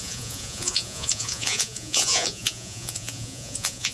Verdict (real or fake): fake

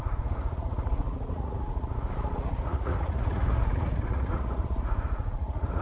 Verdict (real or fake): fake